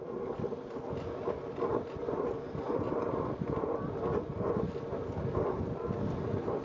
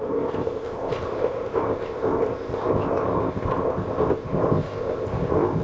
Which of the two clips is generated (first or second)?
second